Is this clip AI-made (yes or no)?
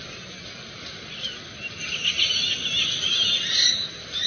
no